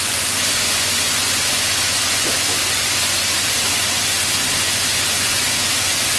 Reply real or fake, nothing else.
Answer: fake